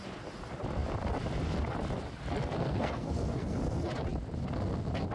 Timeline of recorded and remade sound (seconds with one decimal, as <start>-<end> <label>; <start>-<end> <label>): 0.0-2.6 recorded; 2.6-3.6 remade; 3.6-5.1 recorded